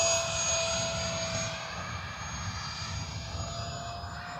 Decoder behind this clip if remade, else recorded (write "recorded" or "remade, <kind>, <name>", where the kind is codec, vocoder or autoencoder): recorded